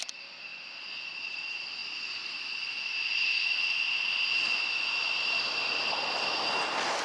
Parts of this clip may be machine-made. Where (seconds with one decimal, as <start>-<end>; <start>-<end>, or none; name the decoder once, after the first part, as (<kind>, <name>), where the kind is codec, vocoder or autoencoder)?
none